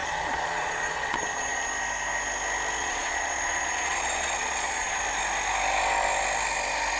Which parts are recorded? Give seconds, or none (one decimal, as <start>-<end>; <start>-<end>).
1.7-2.8; 5.0-7.0